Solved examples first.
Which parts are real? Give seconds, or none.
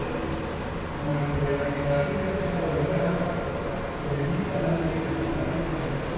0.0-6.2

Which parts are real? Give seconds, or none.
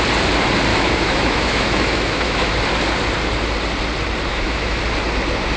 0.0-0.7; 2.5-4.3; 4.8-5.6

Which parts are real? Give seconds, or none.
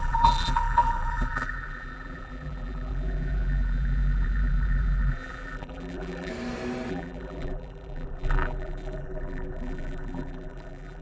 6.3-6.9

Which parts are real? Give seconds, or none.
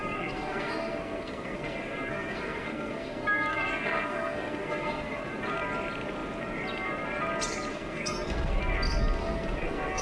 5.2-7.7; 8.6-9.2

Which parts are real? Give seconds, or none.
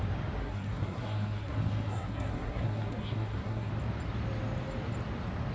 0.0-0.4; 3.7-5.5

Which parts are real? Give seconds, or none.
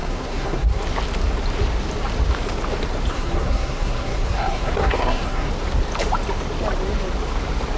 0.8-3.1; 5.5-7.8